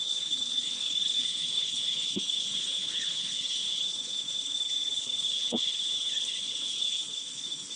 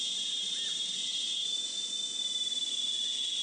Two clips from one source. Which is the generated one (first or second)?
first